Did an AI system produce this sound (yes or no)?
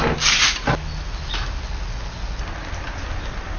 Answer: no